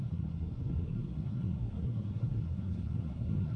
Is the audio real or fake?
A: fake